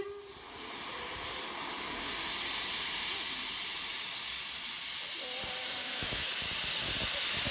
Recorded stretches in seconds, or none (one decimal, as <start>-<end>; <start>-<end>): 0.0-5.8; 6.3-7.5